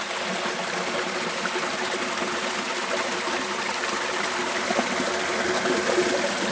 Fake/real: real